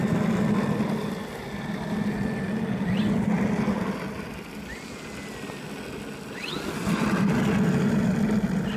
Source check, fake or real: real